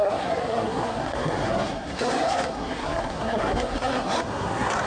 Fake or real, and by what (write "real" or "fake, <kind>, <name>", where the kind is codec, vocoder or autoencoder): fake, codec, SNAC